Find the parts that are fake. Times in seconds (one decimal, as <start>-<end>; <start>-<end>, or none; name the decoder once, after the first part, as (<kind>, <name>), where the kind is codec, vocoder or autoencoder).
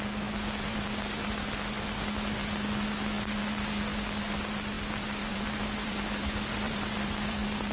5.3-7.7 (vocoder, BigVGAN v2)